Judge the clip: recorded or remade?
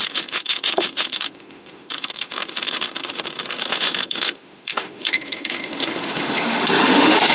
remade